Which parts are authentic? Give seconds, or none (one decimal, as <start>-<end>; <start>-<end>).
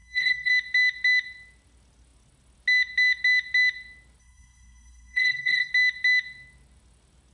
0.5-4.2; 5.7-7.3